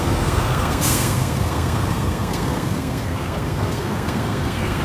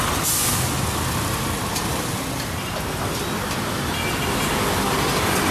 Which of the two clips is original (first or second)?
second